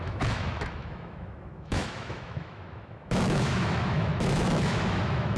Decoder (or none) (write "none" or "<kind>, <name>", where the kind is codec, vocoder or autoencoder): autoencoder, DAC-VAE